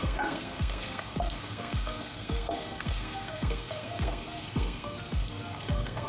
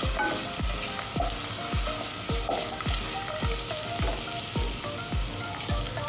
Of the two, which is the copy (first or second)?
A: first